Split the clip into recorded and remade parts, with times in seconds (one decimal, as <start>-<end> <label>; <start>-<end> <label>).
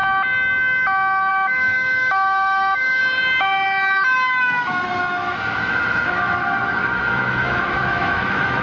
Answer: 0.0-1.3 recorded; 1.3-3.0 remade; 3.0-4.4 recorded; 4.4-8.6 remade